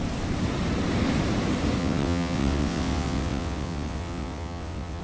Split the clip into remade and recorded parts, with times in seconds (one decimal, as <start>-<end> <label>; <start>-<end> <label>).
0.0-1.8 recorded; 1.8-5.0 remade